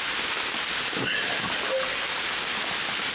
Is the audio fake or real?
real